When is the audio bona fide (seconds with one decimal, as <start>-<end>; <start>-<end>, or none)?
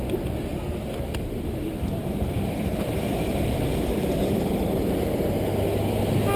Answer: 0.0-2.0; 4.2-6.4